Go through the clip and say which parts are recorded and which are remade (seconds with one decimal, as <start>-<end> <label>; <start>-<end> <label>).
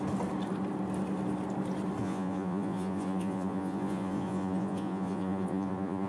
0.0-2.0 recorded; 2.0-6.1 remade